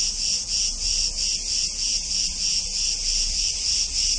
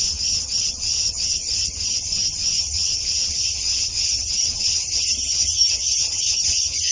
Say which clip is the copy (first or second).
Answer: second